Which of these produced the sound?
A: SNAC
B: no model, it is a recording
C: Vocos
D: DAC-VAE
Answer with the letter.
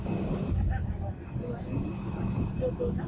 B